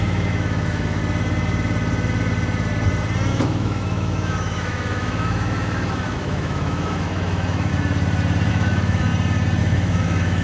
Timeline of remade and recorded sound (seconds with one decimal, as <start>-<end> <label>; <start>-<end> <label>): 0.0-1.0 remade; 1.0-3.3 recorded; 3.3-7.7 remade; 7.7-8.5 recorded; 8.5-9.1 remade; 9.1-9.6 recorded; 9.6-10.4 remade